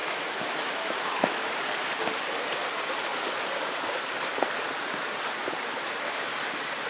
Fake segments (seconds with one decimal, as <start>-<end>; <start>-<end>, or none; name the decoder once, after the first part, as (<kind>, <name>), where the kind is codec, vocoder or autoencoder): 0.0-1.5 (autoencoder, DAC-VAE)